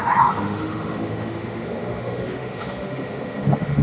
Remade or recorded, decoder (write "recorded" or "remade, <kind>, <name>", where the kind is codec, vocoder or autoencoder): remade, autoencoder, DAC-VAE